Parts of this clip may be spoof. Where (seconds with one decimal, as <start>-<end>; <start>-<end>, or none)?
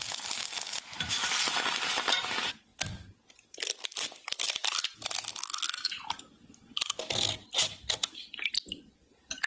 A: none